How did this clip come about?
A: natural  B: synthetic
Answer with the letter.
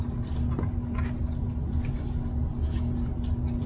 A